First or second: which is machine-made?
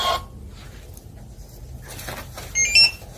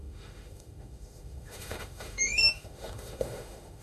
second